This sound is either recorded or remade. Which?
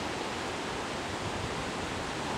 recorded